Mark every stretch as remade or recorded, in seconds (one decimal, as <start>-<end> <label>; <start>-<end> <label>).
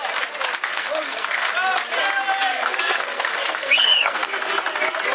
0.0-0.7 recorded; 0.7-1.5 remade; 1.5-2.5 recorded; 2.5-4.5 remade; 4.5-5.1 recorded